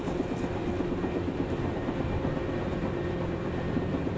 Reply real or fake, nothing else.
fake